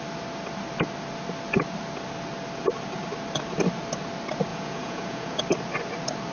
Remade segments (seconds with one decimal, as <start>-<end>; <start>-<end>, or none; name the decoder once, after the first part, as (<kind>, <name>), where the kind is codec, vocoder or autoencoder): 4.5-5.4 (vocoder, Vocos)